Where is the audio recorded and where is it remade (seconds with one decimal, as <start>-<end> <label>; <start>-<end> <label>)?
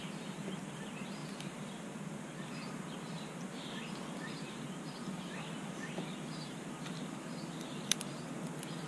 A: 0.0-8.9 recorded